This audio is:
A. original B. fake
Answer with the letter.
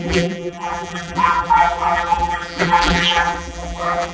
B